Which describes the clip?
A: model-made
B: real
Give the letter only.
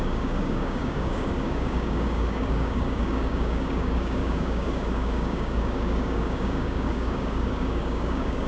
A